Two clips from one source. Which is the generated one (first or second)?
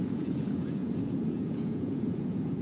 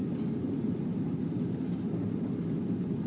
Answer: first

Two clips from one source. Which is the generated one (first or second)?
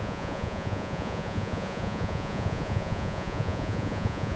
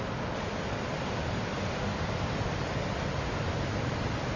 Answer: first